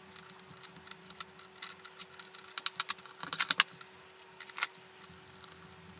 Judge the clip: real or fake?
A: real